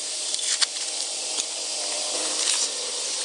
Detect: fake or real fake